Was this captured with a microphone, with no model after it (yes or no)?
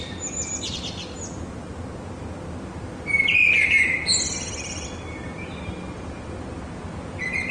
yes